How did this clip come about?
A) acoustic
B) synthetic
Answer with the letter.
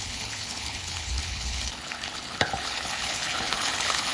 B